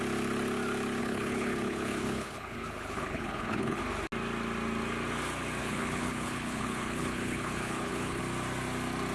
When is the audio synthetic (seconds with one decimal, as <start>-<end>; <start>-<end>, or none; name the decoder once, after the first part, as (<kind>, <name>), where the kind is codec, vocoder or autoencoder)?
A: 1.0-3.8 (codec, HILCodec); 5.6-8.2